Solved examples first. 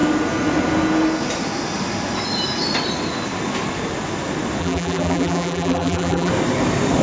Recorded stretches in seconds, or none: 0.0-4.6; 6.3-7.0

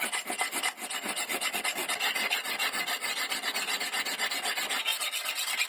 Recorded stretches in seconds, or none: 0.0-5.7